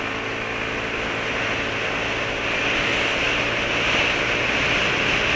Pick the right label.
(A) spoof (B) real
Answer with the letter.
B